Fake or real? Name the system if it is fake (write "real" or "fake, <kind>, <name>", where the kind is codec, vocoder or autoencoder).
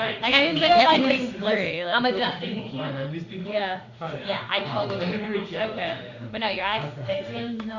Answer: fake, autoencoder, DAC-VAE